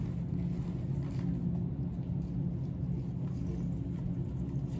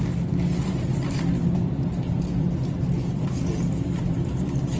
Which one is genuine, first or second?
first